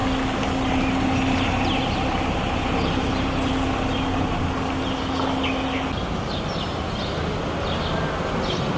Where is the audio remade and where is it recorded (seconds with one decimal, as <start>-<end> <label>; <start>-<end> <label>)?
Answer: 0.0-8.8 recorded